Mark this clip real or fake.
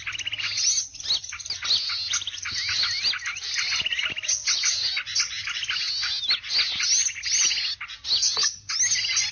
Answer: real